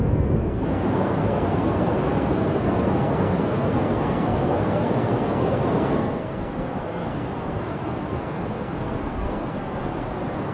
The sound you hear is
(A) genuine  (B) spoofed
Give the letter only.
B